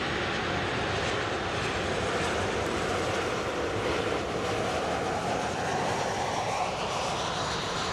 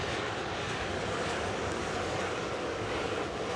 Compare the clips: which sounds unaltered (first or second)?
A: first